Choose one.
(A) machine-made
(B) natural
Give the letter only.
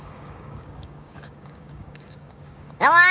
A